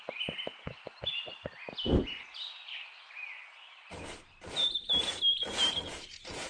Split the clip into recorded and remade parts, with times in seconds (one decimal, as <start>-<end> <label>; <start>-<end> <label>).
0.0-6.5 recorded